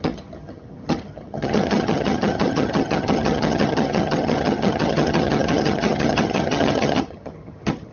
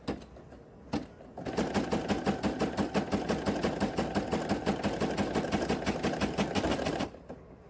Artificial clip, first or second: first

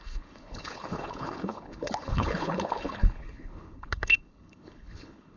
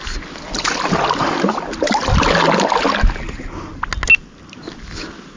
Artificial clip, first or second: first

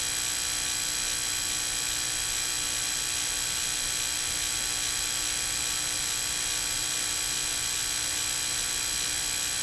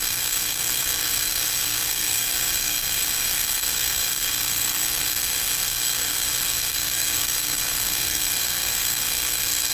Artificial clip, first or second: second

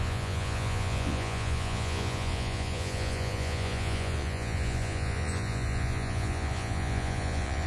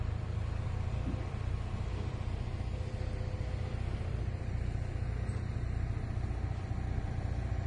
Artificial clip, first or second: first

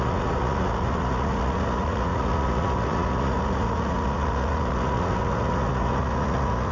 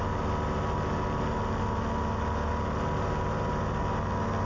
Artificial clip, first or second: first